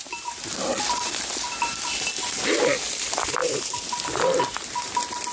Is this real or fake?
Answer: real